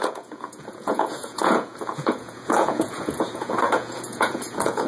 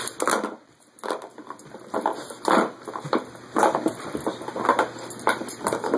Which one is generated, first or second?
first